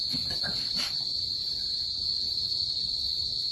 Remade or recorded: remade